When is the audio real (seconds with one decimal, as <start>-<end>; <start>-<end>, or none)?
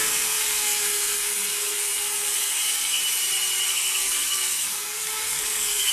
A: 3.0-3.7